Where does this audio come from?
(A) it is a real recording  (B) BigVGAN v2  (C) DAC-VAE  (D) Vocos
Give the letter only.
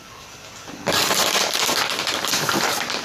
B